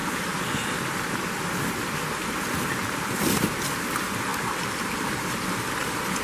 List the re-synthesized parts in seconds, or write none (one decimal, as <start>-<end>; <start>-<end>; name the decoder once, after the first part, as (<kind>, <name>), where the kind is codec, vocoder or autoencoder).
none